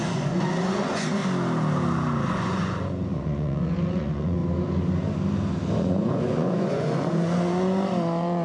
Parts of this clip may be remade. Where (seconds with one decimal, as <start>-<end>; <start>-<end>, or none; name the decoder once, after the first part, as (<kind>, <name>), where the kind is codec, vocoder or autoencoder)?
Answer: 0.0-1.2 (vocoder, Vocos); 2.3-4.4; 5.8-8.4